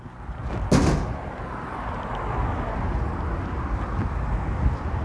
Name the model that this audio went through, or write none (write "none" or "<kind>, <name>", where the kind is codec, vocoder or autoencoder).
none